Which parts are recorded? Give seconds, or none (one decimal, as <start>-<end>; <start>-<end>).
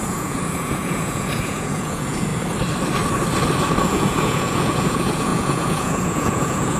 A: 2.3-3.9